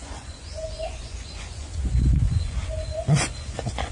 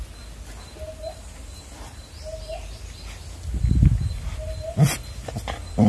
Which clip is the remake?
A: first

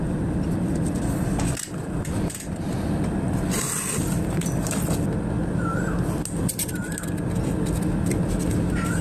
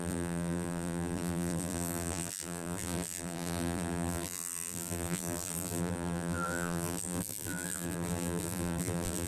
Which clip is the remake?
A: second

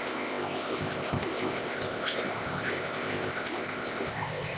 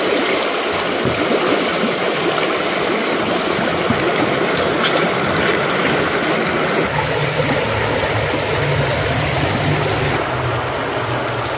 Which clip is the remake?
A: first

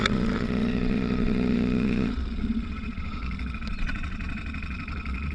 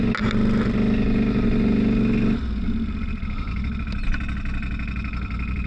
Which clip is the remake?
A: first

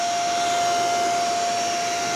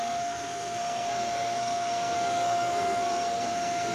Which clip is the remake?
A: second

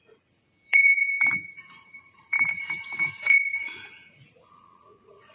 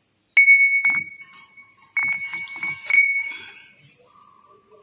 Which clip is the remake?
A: first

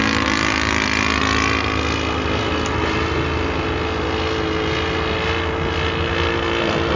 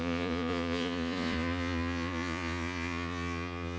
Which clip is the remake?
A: second